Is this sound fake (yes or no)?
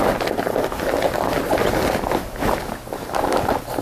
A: no